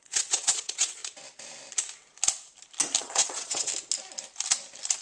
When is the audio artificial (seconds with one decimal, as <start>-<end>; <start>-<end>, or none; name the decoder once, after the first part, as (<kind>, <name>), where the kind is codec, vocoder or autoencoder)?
0.0-1.0 (vocoder, WaveNeXt); 3.0-3.7